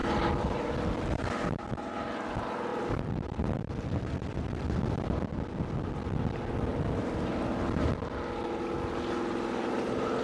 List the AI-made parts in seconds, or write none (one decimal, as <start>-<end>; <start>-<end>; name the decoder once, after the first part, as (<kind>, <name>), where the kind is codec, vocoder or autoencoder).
0.0-1.0 (vocoder, BigVGAN v2); 2.7-4.3; 6.7-7.3